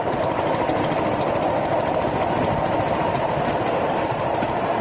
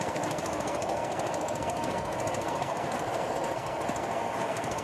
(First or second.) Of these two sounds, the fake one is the second